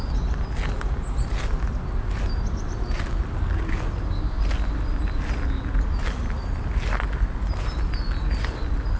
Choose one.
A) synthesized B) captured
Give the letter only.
B